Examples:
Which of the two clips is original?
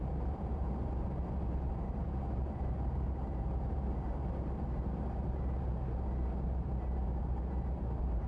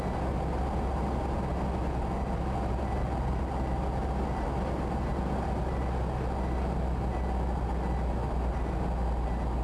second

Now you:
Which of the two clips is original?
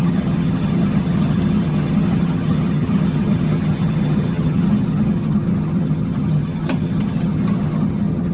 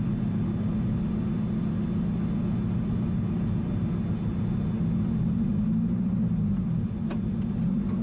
second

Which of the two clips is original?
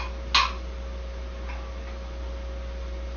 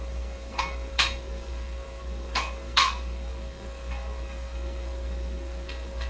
first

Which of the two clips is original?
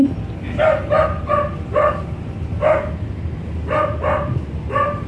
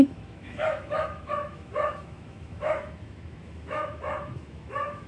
first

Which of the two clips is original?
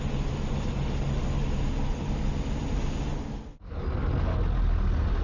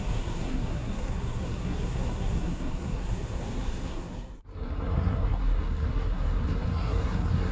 first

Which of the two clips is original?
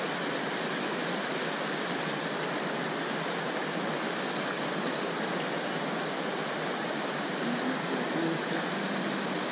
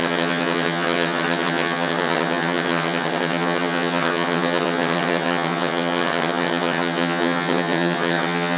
first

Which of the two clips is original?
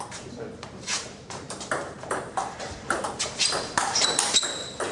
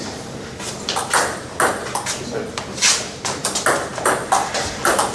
second